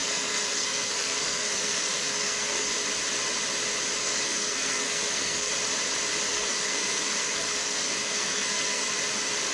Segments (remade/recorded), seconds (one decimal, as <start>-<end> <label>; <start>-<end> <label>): 0.0-2.7 remade; 2.7-4.0 recorded; 4.0-5.5 remade; 5.5-6.3 recorded; 6.3-8.8 remade; 8.8-9.5 recorded